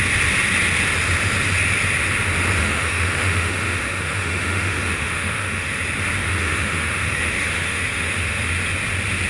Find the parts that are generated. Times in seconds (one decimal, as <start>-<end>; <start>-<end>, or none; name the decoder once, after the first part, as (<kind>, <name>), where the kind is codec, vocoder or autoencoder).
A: 2.6-5.8 (autoencoder, DAC-VAE); 6.2-8.5